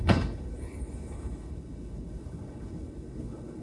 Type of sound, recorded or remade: remade